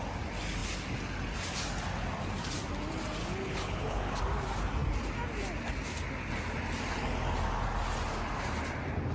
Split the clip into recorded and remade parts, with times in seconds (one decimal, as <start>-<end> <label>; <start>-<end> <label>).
0.0-3.2 recorded; 3.2-4.2 remade; 4.2-9.1 recorded